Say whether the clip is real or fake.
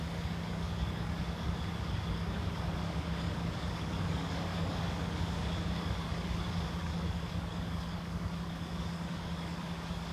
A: fake